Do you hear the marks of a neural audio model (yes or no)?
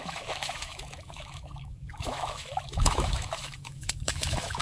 yes